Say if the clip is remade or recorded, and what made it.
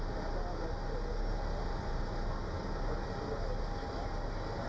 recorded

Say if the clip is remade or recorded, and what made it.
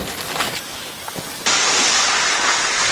recorded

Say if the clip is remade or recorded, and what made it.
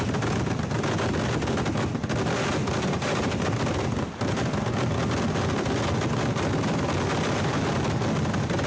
recorded